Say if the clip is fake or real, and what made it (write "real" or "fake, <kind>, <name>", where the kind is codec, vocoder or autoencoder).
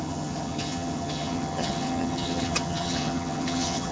fake, vocoder, HiFi-GAN